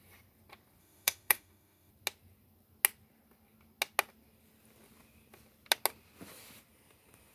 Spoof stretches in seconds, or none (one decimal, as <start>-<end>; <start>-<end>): 0.8-1.9